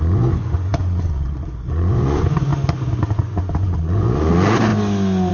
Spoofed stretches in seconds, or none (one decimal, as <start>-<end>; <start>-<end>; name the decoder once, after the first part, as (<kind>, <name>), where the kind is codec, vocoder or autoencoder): 0.0-2.5 (vocoder, Vocos); 3.1-4.7

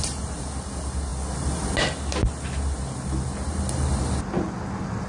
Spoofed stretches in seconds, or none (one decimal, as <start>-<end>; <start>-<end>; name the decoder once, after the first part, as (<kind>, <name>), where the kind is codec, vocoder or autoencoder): none